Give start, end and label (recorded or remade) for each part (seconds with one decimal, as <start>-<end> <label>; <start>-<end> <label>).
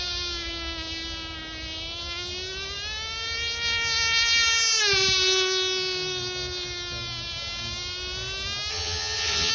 0.0-8.7 recorded; 8.7-9.5 remade